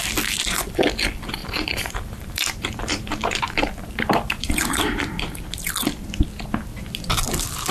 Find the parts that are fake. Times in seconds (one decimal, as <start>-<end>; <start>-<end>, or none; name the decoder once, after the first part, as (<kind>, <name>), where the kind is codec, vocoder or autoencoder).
1.4-5.0 (vocoder, BigVGAN v2)